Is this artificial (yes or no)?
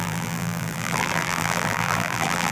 yes